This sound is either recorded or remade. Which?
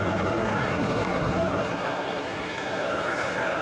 remade